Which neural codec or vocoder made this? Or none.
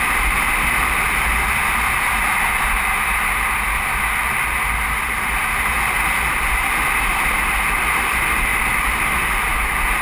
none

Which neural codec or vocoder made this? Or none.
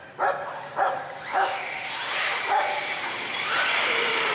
vocoder, BigVGAN v2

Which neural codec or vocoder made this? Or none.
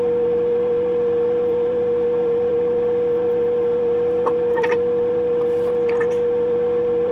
vocoder, BigVGAN v2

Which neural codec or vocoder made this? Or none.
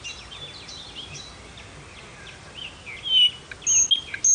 none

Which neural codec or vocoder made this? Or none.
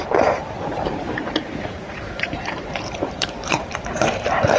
vocoder, BigVGAN v2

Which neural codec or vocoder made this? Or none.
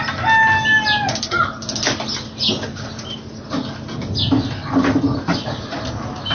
none